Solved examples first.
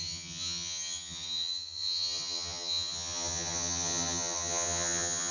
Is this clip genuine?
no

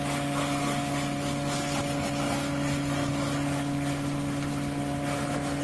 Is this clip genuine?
yes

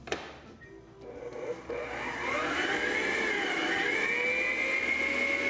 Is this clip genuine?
yes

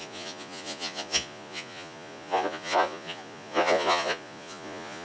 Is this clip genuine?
no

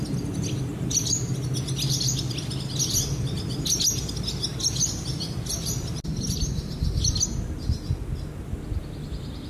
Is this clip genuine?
yes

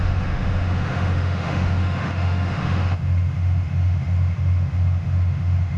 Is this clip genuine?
no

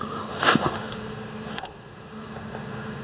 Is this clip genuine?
no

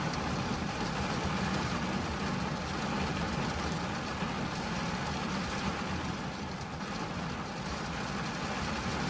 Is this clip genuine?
yes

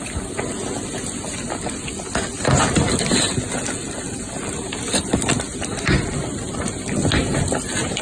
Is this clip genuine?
yes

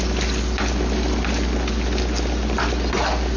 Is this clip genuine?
yes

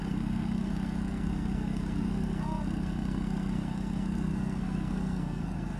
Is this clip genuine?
no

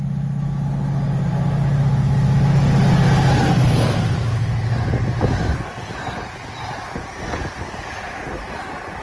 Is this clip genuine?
yes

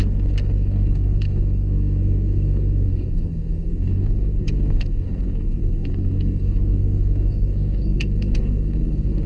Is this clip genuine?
no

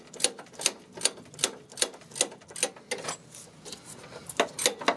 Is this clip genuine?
yes